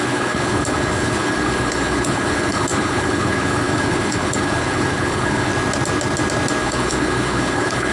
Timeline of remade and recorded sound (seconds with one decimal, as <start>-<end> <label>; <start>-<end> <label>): 0.0-5.5 remade; 5.5-6.6 recorded; 6.6-7.9 remade